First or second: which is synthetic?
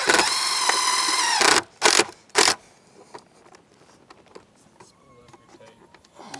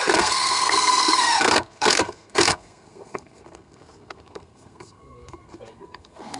second